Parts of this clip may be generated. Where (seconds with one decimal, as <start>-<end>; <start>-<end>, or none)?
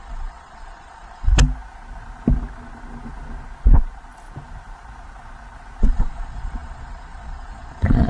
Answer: 0.0-1.3; 5.8-8.1